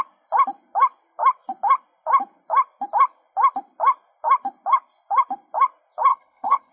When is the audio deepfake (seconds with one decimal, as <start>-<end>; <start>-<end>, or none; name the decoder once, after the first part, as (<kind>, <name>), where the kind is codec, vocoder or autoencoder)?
6.1-6.7 (codec, HILCodec)